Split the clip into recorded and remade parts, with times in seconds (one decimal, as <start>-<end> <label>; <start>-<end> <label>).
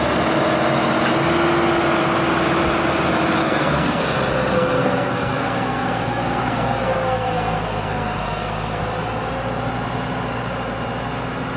0.0-3.4 recorded; 3.4-4.0 remade; 4.0-4.5 recorded; 4.5-8.8 remade; 8.8-11.6 recorded